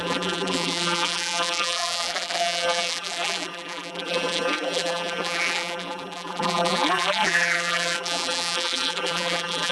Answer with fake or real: fake